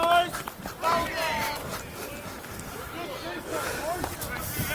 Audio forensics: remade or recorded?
recorded